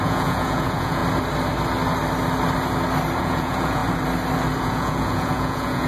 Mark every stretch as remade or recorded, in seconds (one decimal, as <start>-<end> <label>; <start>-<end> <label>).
0.0-1.0 remade; 1.0-3.2 recorded; 3.2-3.8 remade; 3.8-4.6 recorded; 4.6-5.9 remade